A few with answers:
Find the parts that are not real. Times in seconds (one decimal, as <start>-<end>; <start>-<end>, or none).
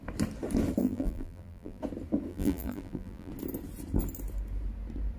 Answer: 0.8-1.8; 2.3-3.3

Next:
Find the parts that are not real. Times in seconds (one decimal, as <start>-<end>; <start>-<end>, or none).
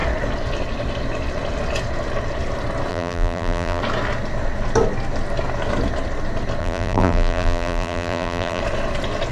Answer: 2.9-3.8; 6.6-8.6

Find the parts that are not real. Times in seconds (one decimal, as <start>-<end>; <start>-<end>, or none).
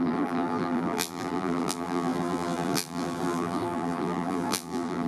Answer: 0.0-5.1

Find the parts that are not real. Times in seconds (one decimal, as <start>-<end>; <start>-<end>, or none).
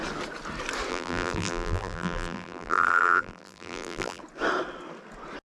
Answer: 0.9-4.2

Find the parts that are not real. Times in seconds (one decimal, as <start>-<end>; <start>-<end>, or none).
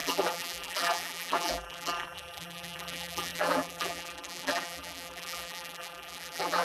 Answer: 0.0-6.6